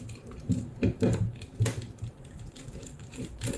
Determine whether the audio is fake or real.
fake